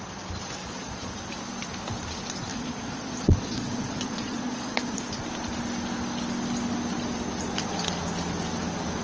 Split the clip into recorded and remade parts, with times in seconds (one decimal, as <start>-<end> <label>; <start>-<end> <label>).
0.0-0.6 recorded; 0.6-1.1 remade; 1.1-2.5 recorded; 2.5-5.0 remade; 5.0-9.0 recorded